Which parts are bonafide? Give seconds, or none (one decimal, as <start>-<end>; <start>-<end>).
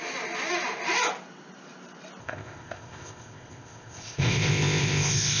0.0-2.2